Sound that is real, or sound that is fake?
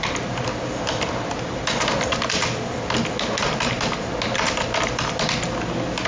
real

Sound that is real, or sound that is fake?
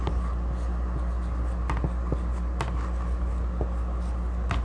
real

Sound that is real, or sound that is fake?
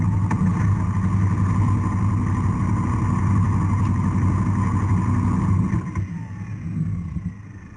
real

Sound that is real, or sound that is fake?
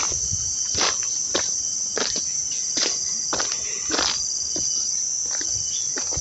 real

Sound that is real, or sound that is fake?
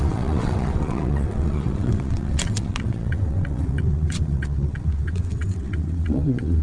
fake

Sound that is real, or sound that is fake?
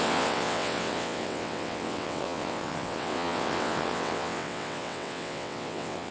fake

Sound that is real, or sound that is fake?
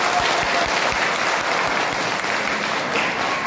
real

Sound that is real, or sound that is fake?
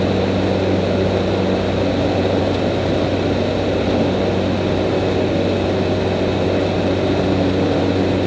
real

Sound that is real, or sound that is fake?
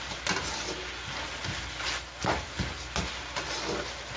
real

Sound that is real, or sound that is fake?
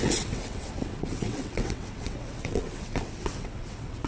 fake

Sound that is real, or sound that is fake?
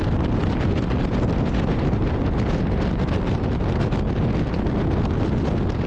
real